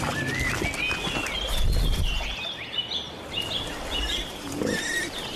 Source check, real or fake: real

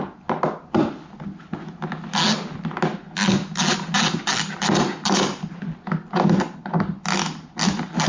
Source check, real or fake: real